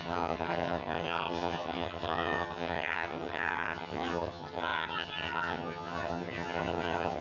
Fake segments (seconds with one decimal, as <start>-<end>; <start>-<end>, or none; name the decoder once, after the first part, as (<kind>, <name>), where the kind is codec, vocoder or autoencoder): 0.0-7.2 (vocoder, HiFi-GAN)